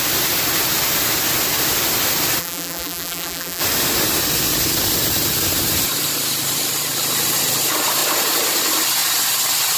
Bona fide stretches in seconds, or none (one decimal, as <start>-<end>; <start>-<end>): 0.0-2.4; 3.6-9.8